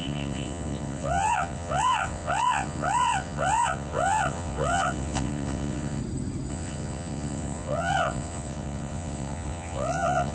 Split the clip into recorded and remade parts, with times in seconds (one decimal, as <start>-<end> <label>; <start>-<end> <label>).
0.0-6.0 remade; 6.0-6.5 recorded; 6.5-10.3 remade